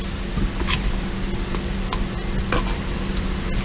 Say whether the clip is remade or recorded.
recorded